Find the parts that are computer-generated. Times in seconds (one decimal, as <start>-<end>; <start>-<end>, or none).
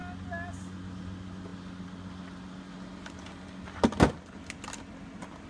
none